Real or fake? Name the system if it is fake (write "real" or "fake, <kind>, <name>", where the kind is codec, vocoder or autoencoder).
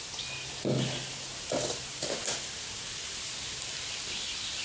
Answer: real